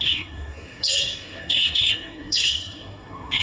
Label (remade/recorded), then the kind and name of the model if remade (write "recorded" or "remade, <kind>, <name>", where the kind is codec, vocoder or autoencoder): remade, codec, SNAC